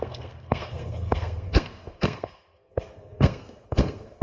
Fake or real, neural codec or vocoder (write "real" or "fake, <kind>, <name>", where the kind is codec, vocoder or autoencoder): fake, codec, SNAC